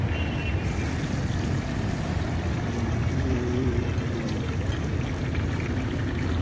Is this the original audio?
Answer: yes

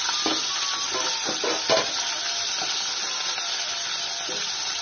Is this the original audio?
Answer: yes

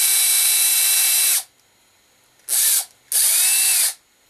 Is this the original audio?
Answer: yes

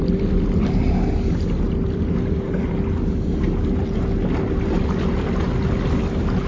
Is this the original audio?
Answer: yes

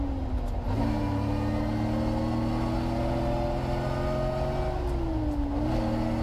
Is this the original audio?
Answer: yes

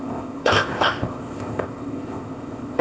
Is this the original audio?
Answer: no